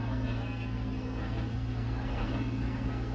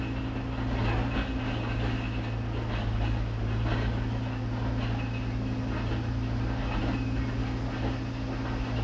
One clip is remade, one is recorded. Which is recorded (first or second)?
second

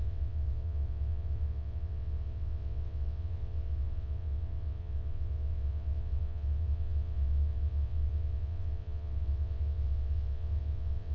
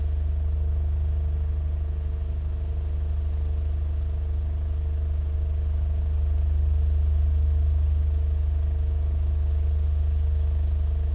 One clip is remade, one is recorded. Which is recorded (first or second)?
second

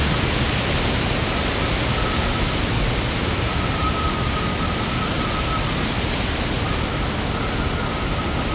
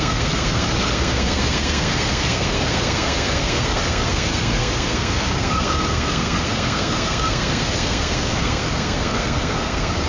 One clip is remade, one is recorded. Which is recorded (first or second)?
first